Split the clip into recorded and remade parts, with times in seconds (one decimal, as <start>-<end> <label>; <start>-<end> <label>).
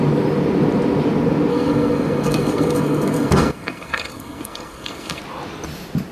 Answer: 0.0-1.5 recorded; 1.5-5.2 remade; 5.2-6.1 recorded